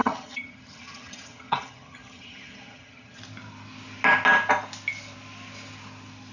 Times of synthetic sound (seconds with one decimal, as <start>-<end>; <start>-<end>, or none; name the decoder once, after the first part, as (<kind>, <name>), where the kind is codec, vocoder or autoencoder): 0.0-3.2 (vocoder, HiFi-GAN)